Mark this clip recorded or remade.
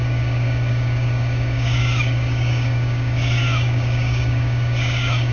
remade